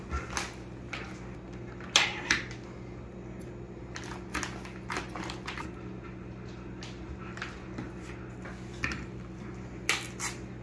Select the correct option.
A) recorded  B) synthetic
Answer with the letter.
A